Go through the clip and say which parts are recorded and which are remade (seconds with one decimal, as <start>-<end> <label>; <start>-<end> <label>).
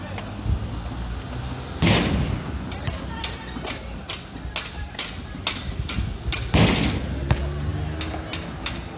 0.0-9.0 recorded